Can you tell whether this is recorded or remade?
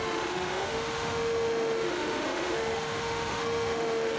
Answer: remade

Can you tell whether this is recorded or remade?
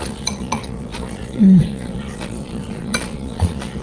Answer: remade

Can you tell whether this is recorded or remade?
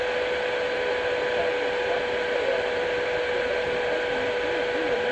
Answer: recorded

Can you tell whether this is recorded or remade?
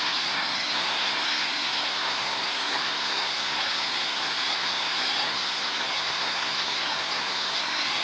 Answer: remade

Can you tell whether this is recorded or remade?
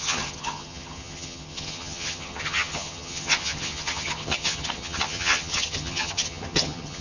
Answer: remade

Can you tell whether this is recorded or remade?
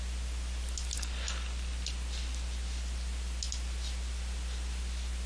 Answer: recorded